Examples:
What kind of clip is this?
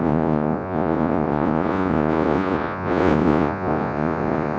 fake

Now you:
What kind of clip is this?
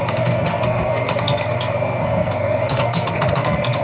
fake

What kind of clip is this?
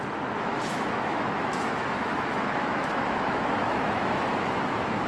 fake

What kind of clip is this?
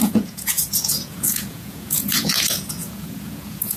fake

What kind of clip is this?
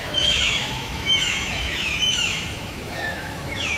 fake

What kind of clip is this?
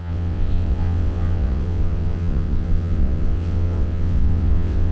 fake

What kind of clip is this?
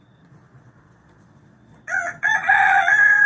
fake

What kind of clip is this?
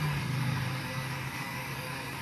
fake